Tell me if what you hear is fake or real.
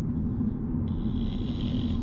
real